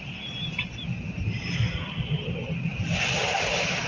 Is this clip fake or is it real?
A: real